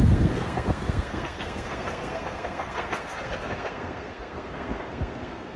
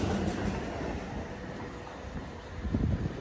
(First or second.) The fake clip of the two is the first